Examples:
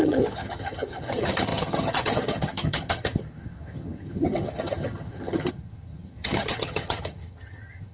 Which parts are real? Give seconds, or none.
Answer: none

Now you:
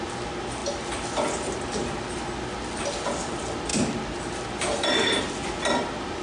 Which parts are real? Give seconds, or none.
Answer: 0.0-6.2

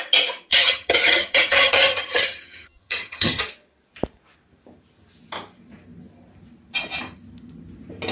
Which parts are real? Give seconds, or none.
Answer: 0.0-0.5; 3.4-8.1

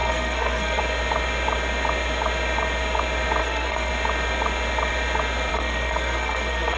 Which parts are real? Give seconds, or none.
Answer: 0.8-3.4; 3.9-5.5

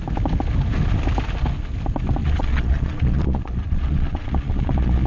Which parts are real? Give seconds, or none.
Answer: 0.0-2.2

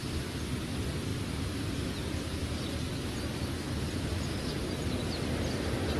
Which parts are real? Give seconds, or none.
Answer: 0.0-6.0